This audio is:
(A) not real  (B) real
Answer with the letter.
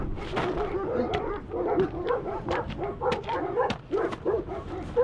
A